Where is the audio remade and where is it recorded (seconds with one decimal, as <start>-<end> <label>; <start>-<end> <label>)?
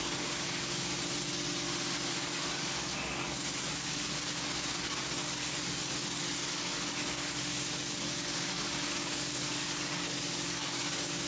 0.0-0.9 remade; 0.9-2.1 recorded; 2.1-11.3 remade